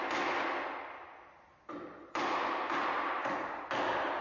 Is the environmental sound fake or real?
real